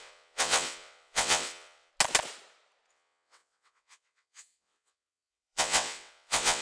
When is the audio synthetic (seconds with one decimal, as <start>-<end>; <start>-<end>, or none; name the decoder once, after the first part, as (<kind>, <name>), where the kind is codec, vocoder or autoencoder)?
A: 0.0-1.9 (vocoder, WaveNeXt); 2.9-6.6